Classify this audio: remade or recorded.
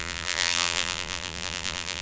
remade